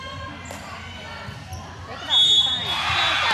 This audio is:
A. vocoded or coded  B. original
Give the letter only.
B